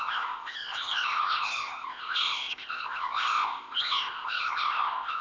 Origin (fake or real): fake